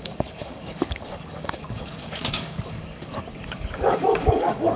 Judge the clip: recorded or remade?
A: remade